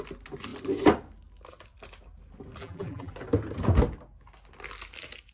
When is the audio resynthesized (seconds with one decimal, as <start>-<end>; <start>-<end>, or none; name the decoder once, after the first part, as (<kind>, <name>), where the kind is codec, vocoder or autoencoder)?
2.6-3.1 (vocoder, BigVGAN v2)